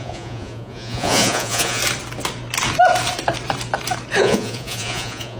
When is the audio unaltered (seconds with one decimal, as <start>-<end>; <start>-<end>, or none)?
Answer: 1.8-4.2